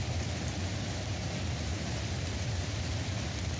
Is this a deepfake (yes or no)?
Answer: no